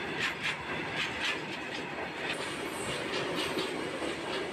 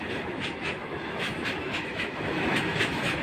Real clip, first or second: first